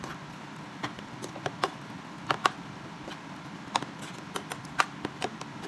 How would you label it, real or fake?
fake